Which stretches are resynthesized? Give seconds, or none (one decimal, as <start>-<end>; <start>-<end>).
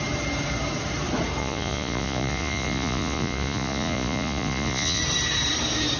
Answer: 1.4-5.0